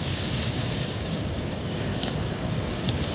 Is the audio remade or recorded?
remade